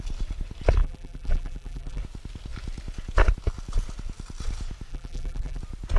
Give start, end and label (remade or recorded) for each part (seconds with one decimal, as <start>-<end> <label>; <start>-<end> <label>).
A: 0.0-0.8 recorded; 0.8-2.0 remade; 2.0-4.9 recorded; 4.9-5.6 remade; 5.6-6.0 recorded